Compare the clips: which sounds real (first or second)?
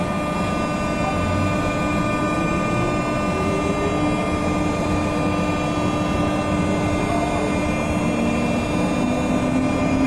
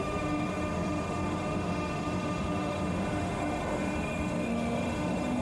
first